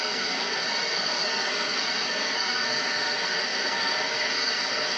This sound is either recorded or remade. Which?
remade